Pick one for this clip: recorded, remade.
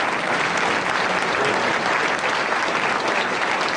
recorded